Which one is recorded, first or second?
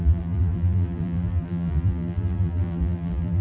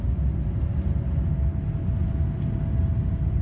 second